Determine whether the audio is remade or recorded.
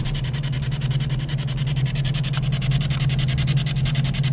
recorded